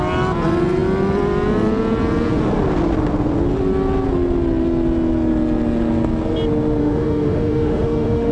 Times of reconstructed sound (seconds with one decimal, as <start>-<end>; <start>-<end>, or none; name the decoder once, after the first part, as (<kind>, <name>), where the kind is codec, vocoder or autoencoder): 6.8-8.3 (autoencoder, DAC-VAE)